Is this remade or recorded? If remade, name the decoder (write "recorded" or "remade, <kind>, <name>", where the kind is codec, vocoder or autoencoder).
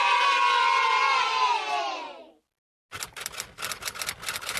recorded